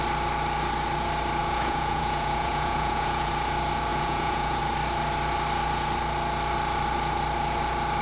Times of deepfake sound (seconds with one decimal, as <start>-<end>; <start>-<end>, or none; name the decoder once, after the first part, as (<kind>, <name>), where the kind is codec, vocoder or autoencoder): 1.4-3.3 (vocoder, Vocos); 3.9-4.6